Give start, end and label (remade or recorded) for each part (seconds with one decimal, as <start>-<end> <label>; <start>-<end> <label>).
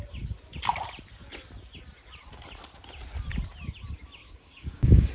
0.0-4.2 recorded; 4.2-5.1 remade